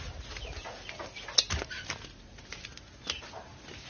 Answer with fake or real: real